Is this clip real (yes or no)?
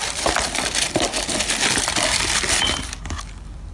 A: no